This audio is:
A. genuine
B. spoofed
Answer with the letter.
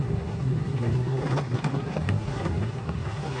B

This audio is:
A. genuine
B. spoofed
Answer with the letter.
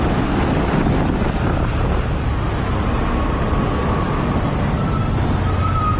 A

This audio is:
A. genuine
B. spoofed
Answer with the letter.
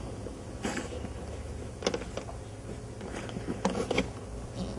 A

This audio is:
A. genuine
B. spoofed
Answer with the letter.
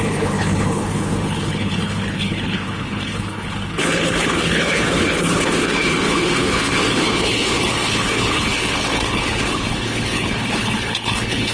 B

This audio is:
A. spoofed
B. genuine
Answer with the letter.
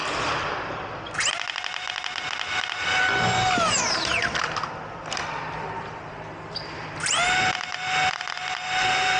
B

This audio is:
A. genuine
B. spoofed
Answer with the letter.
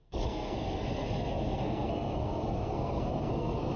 B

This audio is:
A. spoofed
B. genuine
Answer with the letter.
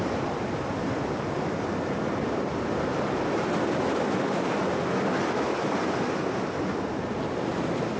B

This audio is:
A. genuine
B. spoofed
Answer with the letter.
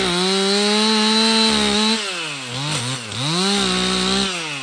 A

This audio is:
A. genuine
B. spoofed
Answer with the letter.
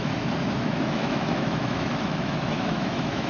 B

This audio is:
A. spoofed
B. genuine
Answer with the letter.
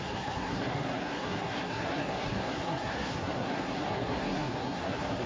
A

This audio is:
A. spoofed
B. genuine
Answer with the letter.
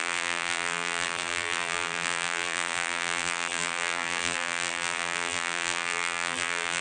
A